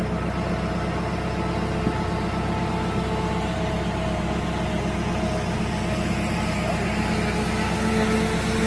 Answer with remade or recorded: recorded